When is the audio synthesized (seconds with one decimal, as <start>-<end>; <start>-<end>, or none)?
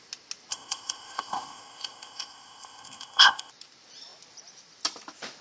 0.5-3.5